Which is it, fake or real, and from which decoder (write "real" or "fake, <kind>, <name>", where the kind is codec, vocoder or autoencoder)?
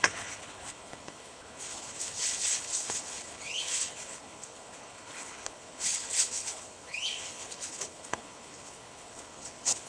fake, codec, HILCodec